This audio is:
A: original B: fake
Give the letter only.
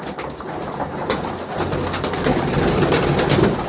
A